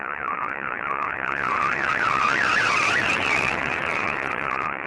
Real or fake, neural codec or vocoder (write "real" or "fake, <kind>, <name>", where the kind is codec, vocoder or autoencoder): fake, vocoder, WaveNeXt